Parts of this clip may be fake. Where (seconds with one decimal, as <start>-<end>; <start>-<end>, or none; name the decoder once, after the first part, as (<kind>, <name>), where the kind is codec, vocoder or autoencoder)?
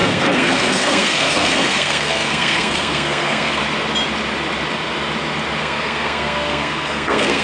0.0-3.6 (codec, SNAC); 5.6-7.4